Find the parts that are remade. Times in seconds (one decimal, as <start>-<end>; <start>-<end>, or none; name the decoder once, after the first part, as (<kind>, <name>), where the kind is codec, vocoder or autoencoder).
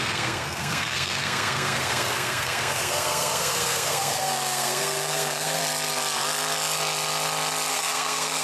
0.0-5.6 (codec, SNAC); 7.7-8.4